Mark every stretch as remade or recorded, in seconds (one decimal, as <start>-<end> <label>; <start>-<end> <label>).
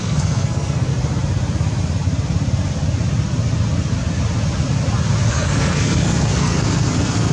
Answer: 0.0-0.9 remade; 0.9-5.3 recorded; 5.3-7.3 remade